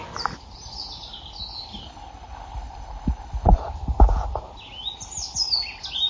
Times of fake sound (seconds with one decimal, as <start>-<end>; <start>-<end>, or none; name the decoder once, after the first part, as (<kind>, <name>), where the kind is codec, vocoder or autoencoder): 1.8-3.6 (codec, HILCodec)